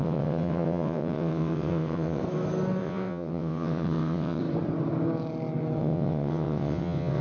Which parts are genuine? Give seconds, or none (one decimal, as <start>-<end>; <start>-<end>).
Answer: 2.2-2.8; 4.4-5.8